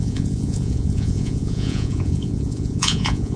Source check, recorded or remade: remade